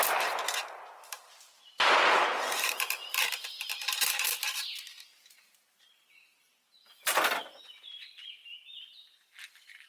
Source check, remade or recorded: recorded